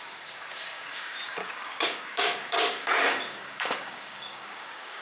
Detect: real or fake fake